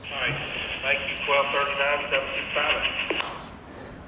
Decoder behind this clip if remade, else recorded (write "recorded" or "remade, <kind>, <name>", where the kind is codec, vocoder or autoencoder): recorded